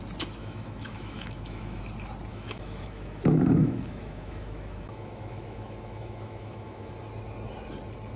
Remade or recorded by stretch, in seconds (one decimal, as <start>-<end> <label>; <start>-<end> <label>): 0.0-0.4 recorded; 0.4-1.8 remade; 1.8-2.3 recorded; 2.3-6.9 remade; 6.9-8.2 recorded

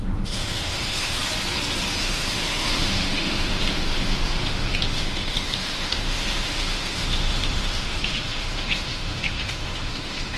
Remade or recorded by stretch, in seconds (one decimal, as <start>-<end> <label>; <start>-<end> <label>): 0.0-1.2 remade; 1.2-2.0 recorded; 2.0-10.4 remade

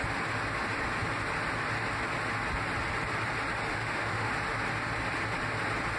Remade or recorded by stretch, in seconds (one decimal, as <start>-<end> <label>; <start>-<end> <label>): 0.0-3.7 recorded; 3.7-4.3 remade; 4.3-6.0 recorded

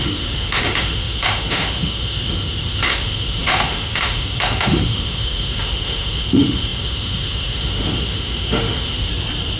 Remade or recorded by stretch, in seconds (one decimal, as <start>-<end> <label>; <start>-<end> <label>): 0.0-9.1 remade; 9.1-9.6 recorded

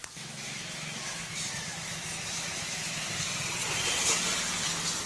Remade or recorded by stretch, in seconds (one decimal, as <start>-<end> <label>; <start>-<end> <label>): 0.0-3.1 remade; 3.1-5.1 recorded

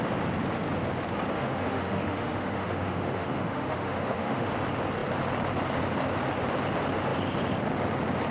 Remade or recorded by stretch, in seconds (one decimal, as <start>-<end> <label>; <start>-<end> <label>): 0.0-1.3 recorded; 1.3-4.5 remade; 4.5-8.3 recorded

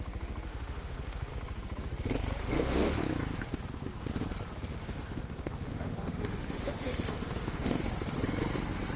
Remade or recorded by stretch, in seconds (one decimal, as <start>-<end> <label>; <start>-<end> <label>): 0.0-0.5 recorded; 0.5-1.3 remade; 1.3-2.4 recorded; 2.4-3.0 remade; 3.0-4.8 recorded; 4.8-7.8 remade; 7.8-9.0 recorded

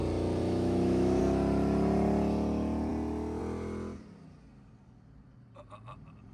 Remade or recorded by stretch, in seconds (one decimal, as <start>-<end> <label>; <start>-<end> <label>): 0.0-0.4 recorded; 0.4-1.2 remade; 1.2-6.3 recorded